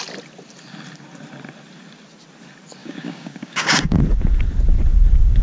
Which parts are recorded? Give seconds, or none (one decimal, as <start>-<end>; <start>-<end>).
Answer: 0.0-2.8; 4.0-5.4